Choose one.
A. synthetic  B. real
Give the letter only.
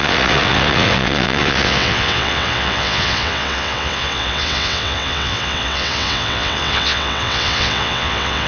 A